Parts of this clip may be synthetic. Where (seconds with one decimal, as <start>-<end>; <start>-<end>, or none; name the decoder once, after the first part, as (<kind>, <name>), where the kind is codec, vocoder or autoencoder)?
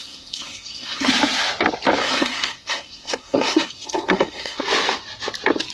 0.0-1.1 (codec, SNAC); 2.0-4.6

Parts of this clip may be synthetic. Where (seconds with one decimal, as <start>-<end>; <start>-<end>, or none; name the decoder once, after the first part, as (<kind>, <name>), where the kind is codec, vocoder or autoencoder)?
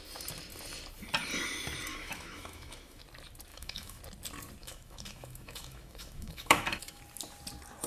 1.9-3.0 (autoencoder, DAC-VAE); 3.5-4.0; 4.6-7.0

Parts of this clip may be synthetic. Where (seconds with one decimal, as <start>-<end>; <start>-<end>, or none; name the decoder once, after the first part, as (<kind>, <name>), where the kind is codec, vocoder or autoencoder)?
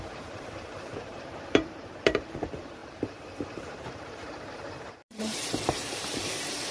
0.0-6.7 (vocoder, BigVGAN v2)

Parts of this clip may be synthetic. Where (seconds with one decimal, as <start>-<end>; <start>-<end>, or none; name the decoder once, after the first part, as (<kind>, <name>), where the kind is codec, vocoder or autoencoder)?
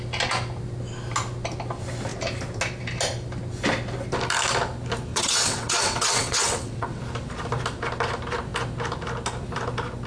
5.1-7.0 (vocoder, WaveNeXt)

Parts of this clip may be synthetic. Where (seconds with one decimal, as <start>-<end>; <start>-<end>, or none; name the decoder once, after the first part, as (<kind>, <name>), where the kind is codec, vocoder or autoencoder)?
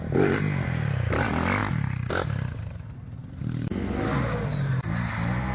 none